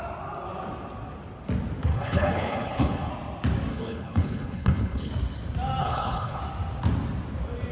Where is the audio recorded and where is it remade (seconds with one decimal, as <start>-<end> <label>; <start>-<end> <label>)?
0.0-1.9 recorded; 1.9-3.1 remade; 3.1-3.7 recorded; 3.7-5.1 remade; 5.1-5.8 recorded; 5.8-6.4 remade; 6.4-7.7 recorded